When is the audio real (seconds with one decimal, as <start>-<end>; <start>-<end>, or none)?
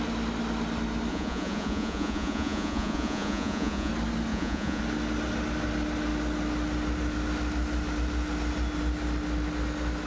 0.0-1.1; 3.9-4.3; 4.8-10.1